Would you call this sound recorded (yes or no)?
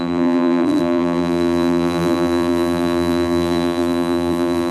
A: no